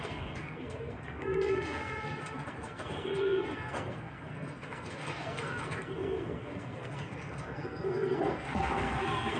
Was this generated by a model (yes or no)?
yes